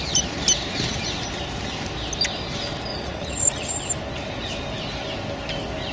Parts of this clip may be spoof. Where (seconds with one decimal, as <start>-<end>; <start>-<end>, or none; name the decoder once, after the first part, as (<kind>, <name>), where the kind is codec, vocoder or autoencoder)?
2.9-3.8 (vocoder, Vocos)